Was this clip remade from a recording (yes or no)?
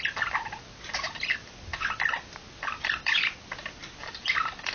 no